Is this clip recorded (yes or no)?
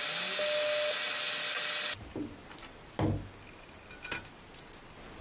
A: yes